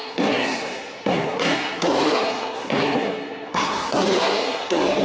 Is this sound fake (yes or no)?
yes